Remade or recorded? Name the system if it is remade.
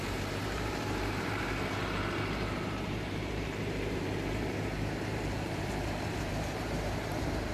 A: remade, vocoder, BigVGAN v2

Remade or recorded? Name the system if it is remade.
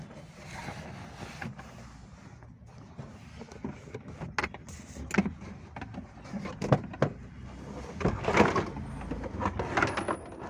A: recorded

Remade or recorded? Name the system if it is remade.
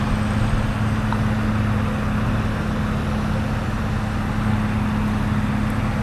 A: recorded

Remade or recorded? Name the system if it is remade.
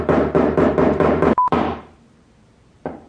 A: remade, vocoder, BigVGAN v2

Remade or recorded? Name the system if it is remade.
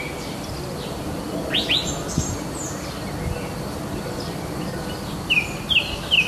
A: recorded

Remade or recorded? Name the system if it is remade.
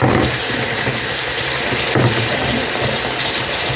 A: recorded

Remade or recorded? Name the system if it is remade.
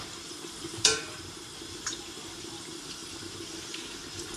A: remade, vocoder, BigVGAN v2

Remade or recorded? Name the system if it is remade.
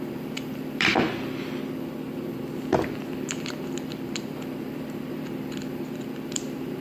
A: remade, vocoder, BigVGAN v2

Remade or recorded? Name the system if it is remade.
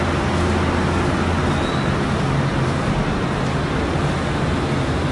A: recorded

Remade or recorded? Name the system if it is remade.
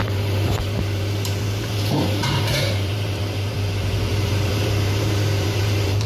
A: remade, vocoder, BigVGAN v2